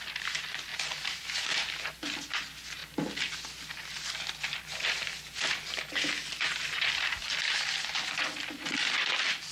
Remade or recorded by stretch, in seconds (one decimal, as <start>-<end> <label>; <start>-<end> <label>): 0.0-9.5 recorded